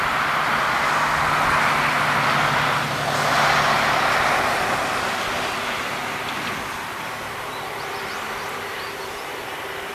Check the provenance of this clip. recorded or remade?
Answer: recorded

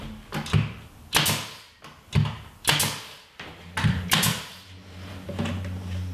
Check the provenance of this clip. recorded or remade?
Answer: recorded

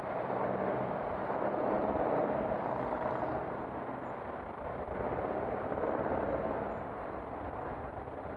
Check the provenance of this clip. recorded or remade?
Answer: recorded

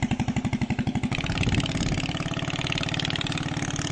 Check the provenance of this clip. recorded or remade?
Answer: recorded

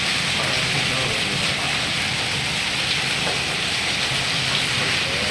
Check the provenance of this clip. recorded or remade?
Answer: recorded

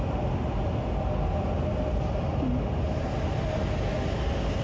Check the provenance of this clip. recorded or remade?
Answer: recorded